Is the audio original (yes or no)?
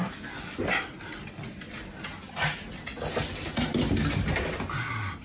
yes